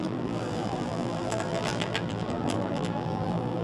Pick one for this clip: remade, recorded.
remade